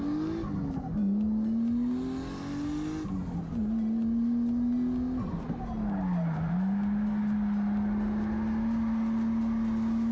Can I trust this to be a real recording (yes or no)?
yes